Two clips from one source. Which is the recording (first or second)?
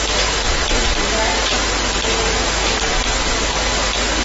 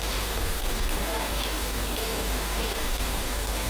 first